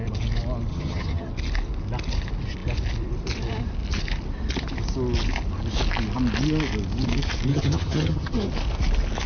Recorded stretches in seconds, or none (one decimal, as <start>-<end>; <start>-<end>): 0.0-0.7; 1.3-7.5; 8.5-9.3